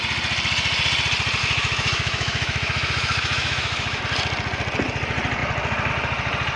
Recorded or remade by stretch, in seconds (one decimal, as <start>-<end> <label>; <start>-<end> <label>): 0.0-1.4 recorded; 1.4-4.0 remade; 4.0-6.6 recorded